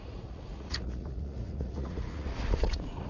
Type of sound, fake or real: fake